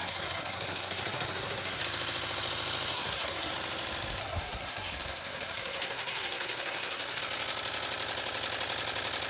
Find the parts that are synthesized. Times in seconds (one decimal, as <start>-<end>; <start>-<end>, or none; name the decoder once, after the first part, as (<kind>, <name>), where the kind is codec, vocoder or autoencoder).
0.0-1.8 (codec, SNAC); 2.9-3.5; 4.2-7.2